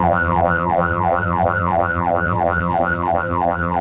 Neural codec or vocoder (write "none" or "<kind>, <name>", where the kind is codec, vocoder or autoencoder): vocoder, BigVGAN v2